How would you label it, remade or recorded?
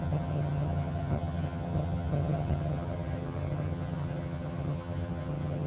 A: remade